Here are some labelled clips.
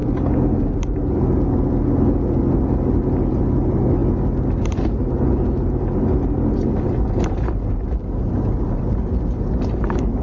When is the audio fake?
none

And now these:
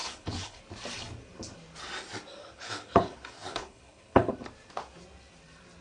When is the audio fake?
0.0-0.6 (codec, HILCodec); 2.4-4.3

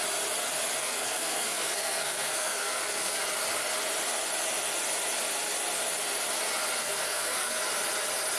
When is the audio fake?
0.8-3.2 (codec, SNAC); 6.8-7.6

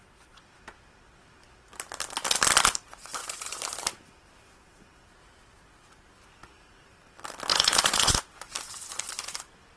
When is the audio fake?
7.5-8.2 (vocoder, Vocos)

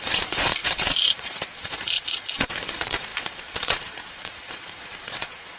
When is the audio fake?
0.0-5.6 (vocoder, Vocos)

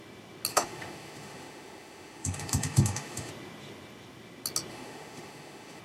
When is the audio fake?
0.5-3.3 (autoencoder, DAC-VAE); 4.7-5.8

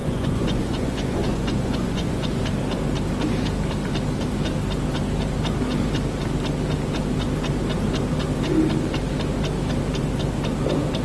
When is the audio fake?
0.0-2.4 (vocoder, Vocos)